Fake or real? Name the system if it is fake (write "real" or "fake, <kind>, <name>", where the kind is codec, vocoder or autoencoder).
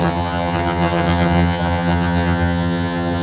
fake, vocoder, HiFi-GAN